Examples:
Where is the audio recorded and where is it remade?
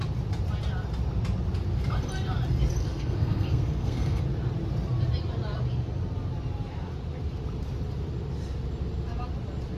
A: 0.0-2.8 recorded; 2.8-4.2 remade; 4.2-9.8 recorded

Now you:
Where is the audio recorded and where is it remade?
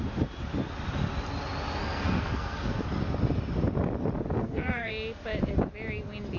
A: 0.0-1.8 recorded; 1.8-2.8 remade; 2.8-4.4 recorded; 4.4-4.9 remade; 4.9-6.4 recorded